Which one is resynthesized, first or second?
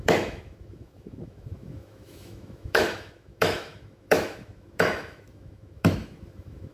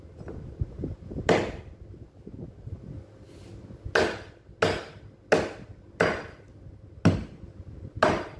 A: first